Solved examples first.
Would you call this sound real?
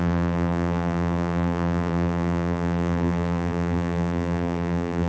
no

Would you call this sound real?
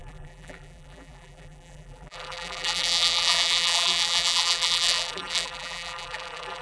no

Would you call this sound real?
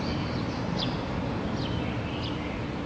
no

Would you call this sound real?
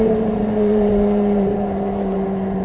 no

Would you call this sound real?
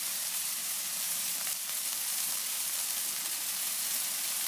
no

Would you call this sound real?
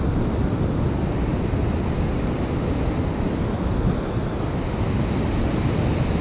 yes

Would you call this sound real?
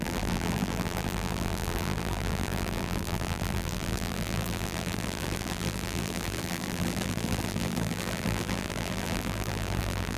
no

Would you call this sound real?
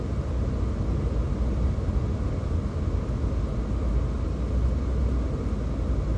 yes